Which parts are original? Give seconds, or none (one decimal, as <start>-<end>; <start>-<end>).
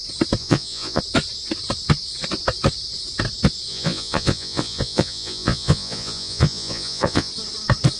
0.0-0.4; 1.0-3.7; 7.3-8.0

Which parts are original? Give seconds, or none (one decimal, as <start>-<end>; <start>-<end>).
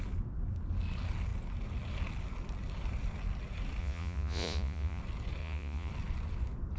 0.0-3.8; 5.0-5.4; 5.9-6.8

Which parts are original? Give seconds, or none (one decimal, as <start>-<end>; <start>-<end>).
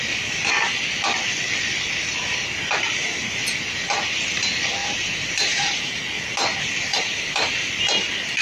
0.0-4.8; 6.0-6.9; 7.7-8.4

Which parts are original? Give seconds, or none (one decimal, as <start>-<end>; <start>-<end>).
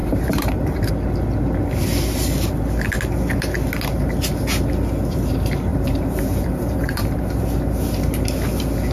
0.9-5.7; 7.6-8.9